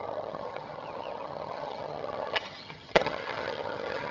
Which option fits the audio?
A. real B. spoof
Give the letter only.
B